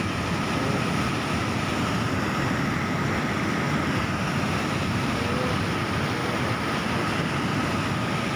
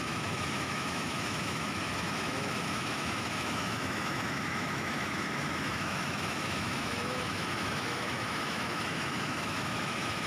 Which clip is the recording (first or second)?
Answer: first